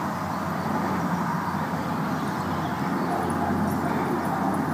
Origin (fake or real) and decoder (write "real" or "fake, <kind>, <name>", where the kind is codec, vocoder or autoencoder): real